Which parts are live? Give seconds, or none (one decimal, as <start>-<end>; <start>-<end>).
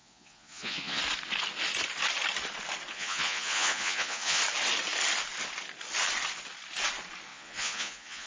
1.0-2.9; 4.4-7.3